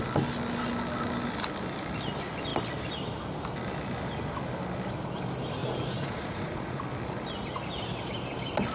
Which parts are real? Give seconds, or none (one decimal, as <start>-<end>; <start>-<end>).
0.0-5.6; 6.8-8.7